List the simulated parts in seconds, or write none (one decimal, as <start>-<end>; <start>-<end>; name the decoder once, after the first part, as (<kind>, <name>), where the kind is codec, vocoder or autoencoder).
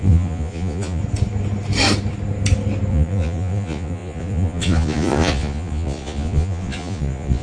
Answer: 0.0-1.0 (vocoder, Vocos); 2.9-7.4